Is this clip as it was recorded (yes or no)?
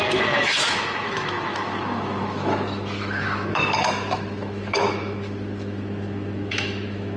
no